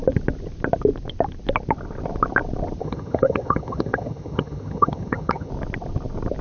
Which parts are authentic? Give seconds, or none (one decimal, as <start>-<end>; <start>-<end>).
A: 0.0-2.8; 5.5-6.4